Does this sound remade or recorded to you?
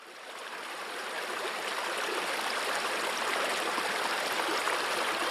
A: remade